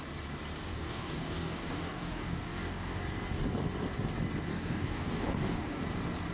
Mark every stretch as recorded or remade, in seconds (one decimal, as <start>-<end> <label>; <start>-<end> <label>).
0.0-0.7 recorded; 0.7-3.0 remade; 3.0-4.5 recorded; 4.5-5.8 remade; 5.8-6.3 recorded